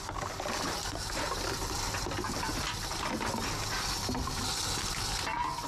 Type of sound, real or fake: real